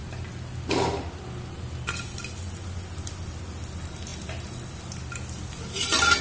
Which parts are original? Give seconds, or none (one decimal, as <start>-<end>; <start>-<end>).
0.0-6.2